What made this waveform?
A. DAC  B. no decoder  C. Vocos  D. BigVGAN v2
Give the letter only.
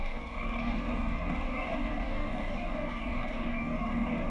A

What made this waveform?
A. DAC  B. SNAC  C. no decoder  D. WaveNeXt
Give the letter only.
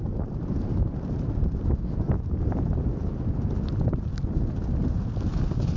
C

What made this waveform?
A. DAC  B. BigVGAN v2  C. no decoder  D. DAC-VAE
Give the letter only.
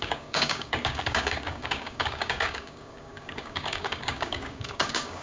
A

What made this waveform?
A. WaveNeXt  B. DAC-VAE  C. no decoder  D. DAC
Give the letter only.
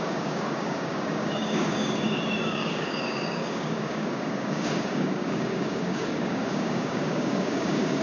D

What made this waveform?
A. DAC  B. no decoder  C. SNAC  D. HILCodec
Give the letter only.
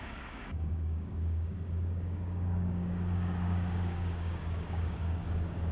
A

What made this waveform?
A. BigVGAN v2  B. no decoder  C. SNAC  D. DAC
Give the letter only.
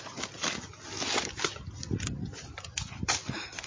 B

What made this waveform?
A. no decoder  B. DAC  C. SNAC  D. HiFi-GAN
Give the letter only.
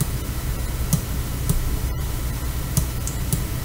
A